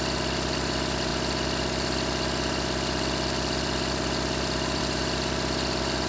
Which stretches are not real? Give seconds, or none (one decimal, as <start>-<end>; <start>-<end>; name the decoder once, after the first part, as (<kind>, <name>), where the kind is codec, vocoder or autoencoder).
none